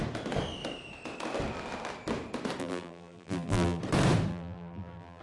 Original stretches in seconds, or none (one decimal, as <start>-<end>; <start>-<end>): 0.0-2.6; 3.8-4.3